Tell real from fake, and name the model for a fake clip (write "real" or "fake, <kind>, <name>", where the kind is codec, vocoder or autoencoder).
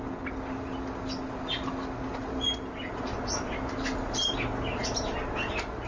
real